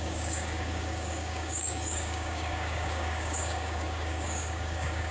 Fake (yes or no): yes